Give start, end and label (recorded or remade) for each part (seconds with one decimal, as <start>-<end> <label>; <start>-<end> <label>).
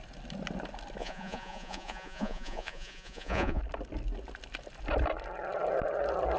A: 0.0-1.0 recorded; 1.0-3.6 remade; 3.6-6.4 recorded